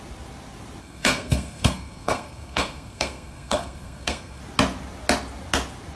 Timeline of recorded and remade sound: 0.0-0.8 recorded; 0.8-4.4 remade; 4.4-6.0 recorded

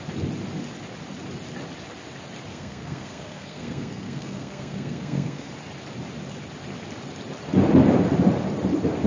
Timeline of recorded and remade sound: 0.0-2.5 recorded; 2.5-5.5 remade; 5.5-9.1 recorded

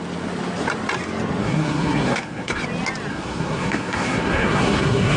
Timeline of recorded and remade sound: 0.0-1.4 recorded; 1.4-2.6 remade; 2.6-3.1 recorded; 3.1-5.2 remade

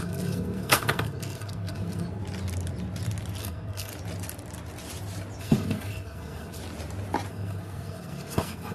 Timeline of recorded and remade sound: 0.0-2.2 remade; 2.2-3.4 recorded; 3.4-3.9 remade; 3.9-5.4 recorded; 5.4-6.6 remade; 6.6-7.3 recorded; 7.3-8.7 remade

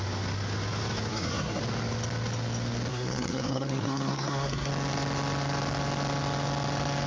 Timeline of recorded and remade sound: 0.0-1.1 recorded; 1.1-1.6 remade; 1.6-2.9 recorded; 2.9-4.7 remade; 4.7-7.1 recorded

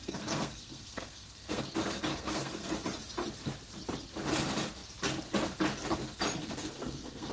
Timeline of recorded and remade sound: 0.0-1.6 remade; 1.6-2.1 recorded; 2.1-2.7 remade; 2.7-6.4 recorded; 6.4-7.3 remade

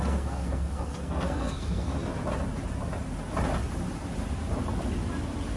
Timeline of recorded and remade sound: 0.0-1.9 remade; 1.9-5.6 recorded

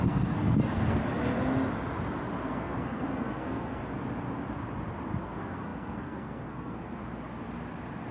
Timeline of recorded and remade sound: 0.0-1.0 remade; 1.0-2.4 recorded; 2.4-3.8 remade; 3.8-5.2 recorded; 5.2-7.0 remade; 7.0-8.1 recorded